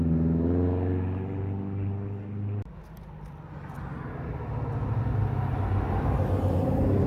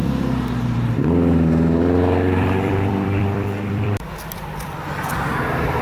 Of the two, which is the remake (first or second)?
second